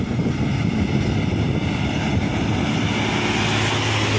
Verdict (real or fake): real